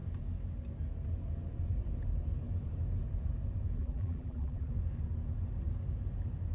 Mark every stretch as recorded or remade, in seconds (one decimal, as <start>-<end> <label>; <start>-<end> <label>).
0.0-3.8 recorded; 3.8-4.7 remade; 4.7-6.5 recorded